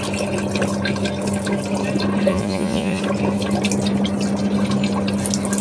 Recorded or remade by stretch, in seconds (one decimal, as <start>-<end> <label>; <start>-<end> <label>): 0.0-2.3 recorded; 2.3-3.0 remade; 3.0-5.6 recorded